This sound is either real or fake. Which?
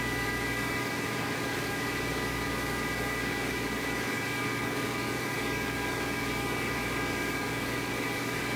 fake